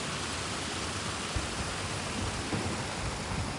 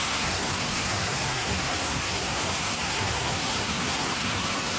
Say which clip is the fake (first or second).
second